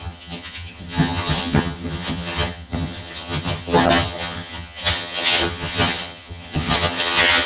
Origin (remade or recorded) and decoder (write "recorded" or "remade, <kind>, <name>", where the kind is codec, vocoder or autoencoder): remade, vocoder, HiFi-GAN